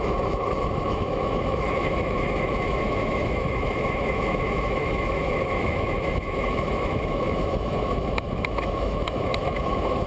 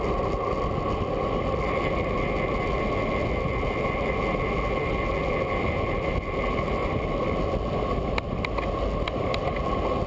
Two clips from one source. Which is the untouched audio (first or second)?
second